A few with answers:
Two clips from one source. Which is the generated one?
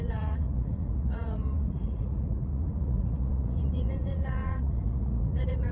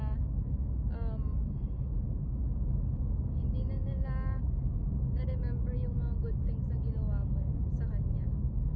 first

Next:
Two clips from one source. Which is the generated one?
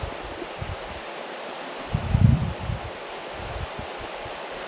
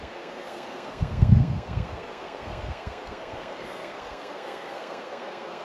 second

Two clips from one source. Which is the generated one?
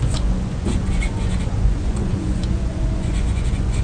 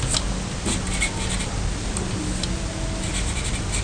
first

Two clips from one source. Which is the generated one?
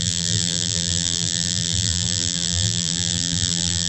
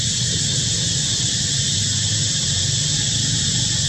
first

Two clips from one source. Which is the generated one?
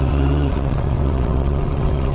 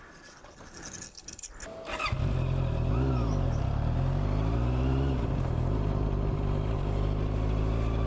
first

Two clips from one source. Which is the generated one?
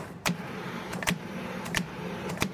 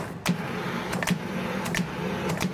first